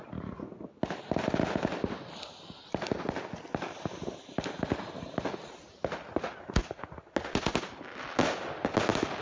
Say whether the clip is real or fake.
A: real